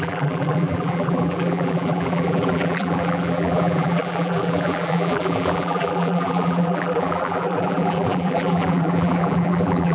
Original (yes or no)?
no